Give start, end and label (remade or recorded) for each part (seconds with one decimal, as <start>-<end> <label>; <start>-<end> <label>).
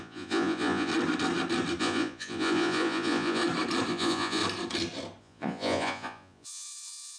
0.0-0.9 remade; 0.9-1.8 recorded; 1.8-3.4 remade; 3.4-3.9 recorded; 3.9-4.4 remade; 4.4-5.2 recorded; 5.2-7.2 remade